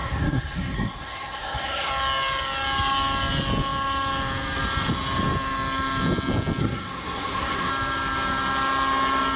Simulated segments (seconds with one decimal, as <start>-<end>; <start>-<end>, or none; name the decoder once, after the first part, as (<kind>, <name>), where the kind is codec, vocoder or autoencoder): 0.0-1.9 (codec, SNAC); 6.6-7.7